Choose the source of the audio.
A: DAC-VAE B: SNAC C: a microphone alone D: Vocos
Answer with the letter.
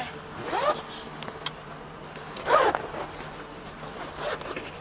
C